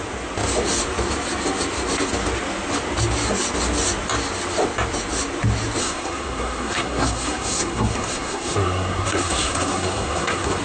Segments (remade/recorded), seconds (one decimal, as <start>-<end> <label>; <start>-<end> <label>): 0.0-5.8 recorded; 5.8-10.6 remade

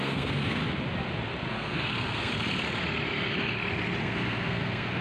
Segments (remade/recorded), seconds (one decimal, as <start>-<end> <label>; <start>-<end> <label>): 0.0-0.6 remade; 0.6-1.5 recorded; 1.5-2.3 remade; 2.3-4.0 recorded; 4.0-5.0 remade

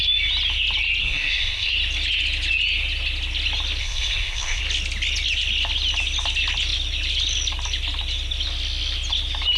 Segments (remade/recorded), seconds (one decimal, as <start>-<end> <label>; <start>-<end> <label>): 0.0-1.0 recorded; 1.0-1.7 remade; 1.7-3.8 recorded; 3.8-4.6 remade; 4.6-9.6 recorded

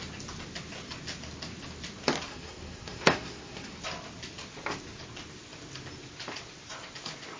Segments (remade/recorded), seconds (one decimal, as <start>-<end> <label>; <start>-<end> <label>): 0.0-2.3 recorded; 2.3-3.8 remade; 3.8-7.4 recorded

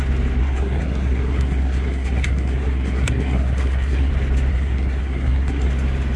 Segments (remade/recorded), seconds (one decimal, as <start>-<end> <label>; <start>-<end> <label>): 0.0-0.4 recorded; 0.4-4.1 remade; 4.1-4.5 recorded; 4.5-5.7 remade; 5.7-6.2 recorded